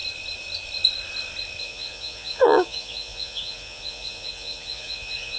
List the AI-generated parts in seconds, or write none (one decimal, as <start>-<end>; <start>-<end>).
1.6-5.4